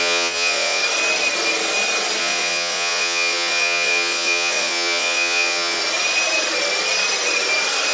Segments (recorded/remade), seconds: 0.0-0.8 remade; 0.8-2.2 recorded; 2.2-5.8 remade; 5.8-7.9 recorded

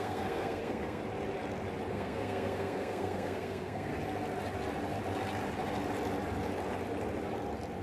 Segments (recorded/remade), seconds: 0.0-1.0 remade; 1.0-1.9 recorded; 1.9-3.9 remade; 3.9-7.8 recorded